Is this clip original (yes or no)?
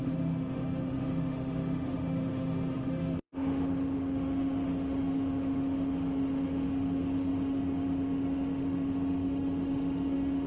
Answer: no